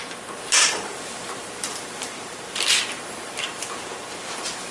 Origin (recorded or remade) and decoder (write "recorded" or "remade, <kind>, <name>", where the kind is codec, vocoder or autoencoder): remade, vocoder, BigVGAN v2